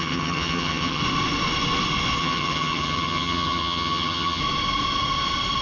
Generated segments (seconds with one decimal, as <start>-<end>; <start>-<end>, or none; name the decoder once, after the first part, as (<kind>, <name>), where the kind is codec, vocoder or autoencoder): 0.0-1.0 (vocoder, HiFi-GAN); 2.2-4.4